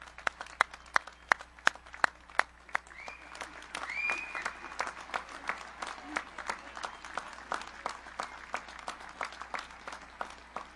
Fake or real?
real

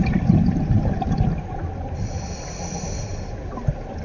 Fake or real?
real